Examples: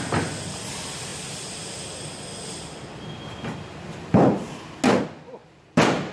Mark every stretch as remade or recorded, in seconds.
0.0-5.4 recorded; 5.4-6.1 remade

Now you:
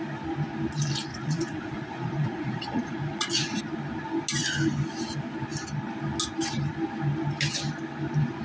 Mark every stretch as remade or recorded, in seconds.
0.0-1.1 recorded; 1.1-3.6 remade; 3.6-8.4 recorded

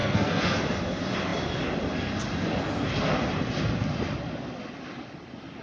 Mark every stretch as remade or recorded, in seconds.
0.0-0.6 remade; 0.6-5.6 recorded

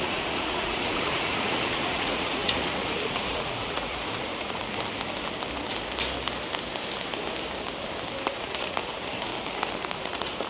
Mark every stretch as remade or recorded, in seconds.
0.0-4.6 remade; 4.6-8.3 recorded; 8.3-9.3 remade; 9.3-9.8 recorded; 9.8-10.5 remade

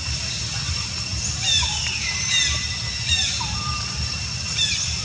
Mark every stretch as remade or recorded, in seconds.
0.0-5.0 recorded

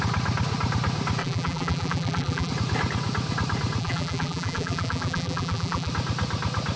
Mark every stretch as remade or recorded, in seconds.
0.0-1.2 recorded; 1.2-2.5 remade; 2.5-3.8 recorded; 3.8-5.9 remade; 5.9-6.8 recorded

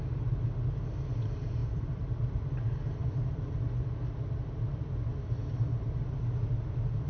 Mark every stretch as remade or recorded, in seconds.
0.0-7.1 remade

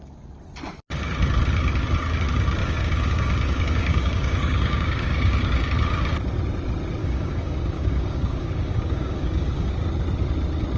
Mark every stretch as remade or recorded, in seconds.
0.0-2.6 recorded; 2.6-5.6 remade; 5.6-7.0 recorded; 7.0-9.7 remade; 9.7-10.8 recorded